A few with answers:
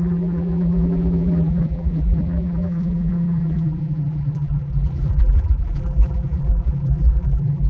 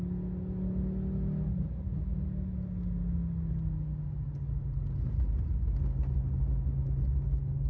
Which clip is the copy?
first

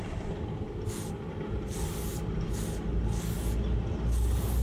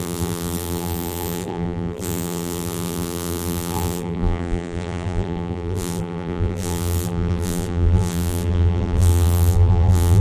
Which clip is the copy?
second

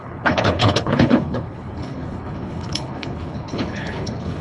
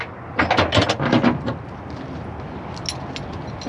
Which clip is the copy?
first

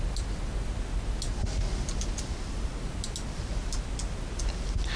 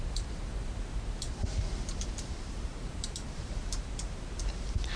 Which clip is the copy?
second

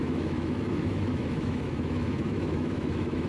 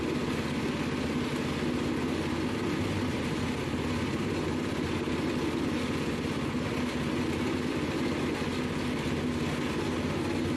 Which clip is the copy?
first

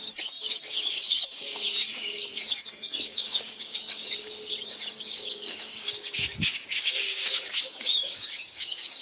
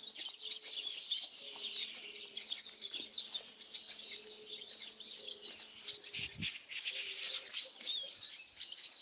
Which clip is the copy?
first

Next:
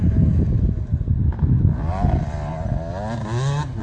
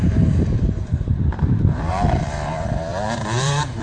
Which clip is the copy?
second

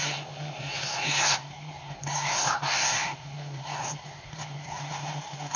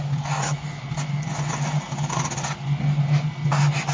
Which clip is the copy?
first